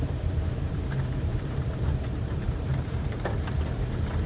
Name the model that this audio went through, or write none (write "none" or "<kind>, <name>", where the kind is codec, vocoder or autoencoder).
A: vocoder, BigVGAN v2